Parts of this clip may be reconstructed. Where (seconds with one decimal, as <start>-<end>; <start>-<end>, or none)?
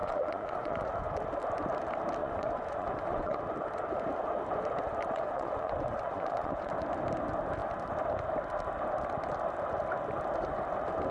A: 0.0-1.1; 2.2-3.4; 5.0-6.7